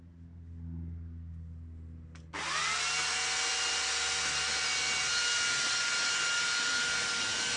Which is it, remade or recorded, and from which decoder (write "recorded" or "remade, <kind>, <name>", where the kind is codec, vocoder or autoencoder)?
recorded